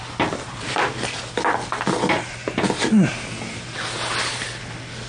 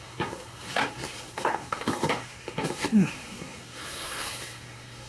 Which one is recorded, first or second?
first